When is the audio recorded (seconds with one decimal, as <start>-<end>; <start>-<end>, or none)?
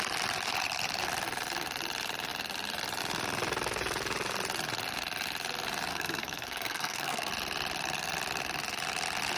0.0-5.9; 7.3-9.4